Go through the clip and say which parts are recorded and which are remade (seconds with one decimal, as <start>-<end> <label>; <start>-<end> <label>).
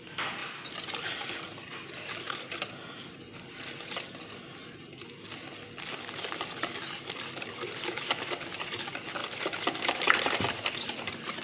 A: 0.0-11.4 recorded